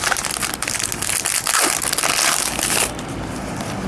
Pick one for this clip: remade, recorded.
recorded